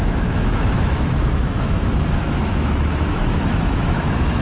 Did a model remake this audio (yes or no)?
yes